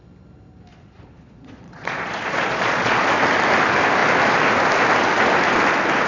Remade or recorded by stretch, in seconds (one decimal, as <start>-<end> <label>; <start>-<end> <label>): 0.0-0.7 recorded; 0.7-3.1 remade; 3.1-6.1 recorded